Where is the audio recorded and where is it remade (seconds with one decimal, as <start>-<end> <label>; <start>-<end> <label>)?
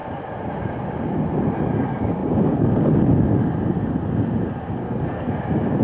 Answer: 0.0-4.8 recorded; 4.8-5.3 remade; 5.3-5.8 recorded